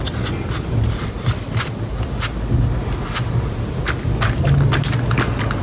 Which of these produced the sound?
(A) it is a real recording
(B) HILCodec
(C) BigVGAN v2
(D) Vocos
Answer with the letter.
A